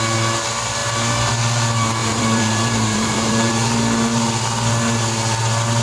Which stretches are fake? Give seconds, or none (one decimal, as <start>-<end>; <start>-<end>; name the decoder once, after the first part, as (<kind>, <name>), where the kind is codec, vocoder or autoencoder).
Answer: 2.0-3.5 (vocoder, BigVGAN v2)